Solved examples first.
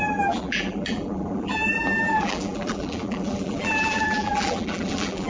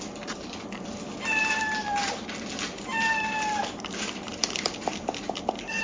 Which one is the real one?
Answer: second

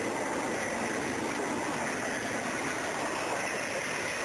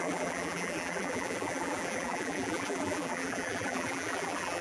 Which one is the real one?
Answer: first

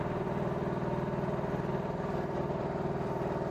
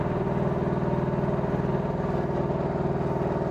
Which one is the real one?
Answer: second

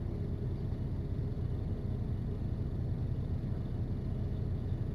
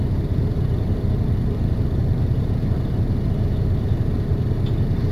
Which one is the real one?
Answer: first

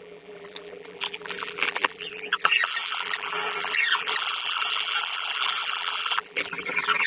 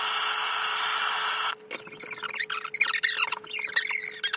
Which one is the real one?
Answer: second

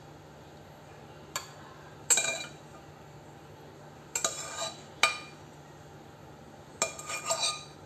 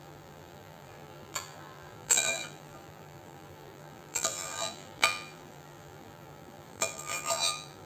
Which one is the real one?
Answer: first